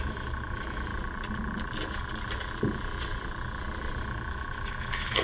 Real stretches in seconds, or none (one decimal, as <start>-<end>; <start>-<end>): 0.9-4.0